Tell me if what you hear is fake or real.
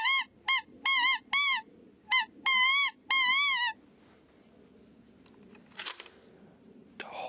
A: real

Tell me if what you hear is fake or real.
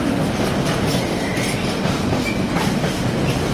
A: real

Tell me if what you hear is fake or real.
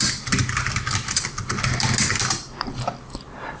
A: real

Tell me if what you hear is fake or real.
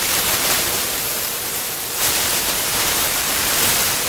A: fake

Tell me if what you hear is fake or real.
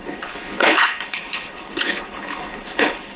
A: fake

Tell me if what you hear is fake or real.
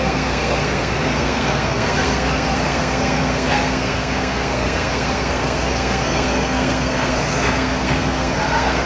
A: fake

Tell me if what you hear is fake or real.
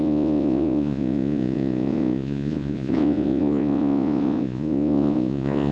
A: fake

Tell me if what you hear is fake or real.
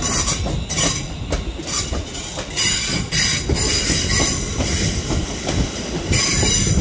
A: real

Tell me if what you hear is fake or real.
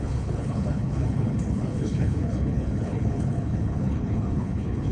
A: fake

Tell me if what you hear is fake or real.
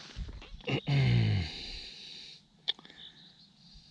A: real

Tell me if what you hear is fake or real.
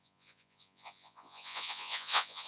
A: fake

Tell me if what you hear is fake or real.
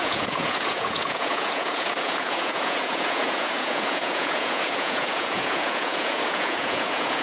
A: fake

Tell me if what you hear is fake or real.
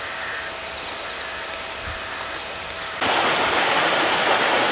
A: real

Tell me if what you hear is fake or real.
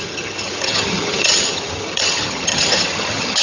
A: fake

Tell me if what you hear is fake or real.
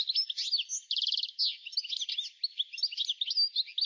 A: real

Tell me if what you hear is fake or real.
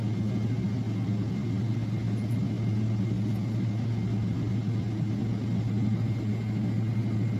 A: real